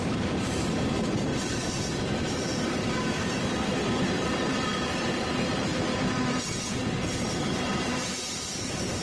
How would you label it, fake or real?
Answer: fake